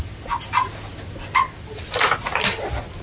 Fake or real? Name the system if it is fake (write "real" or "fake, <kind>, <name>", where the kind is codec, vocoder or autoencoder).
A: real